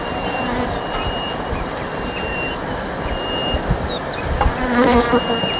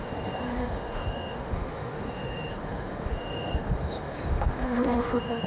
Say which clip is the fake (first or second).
second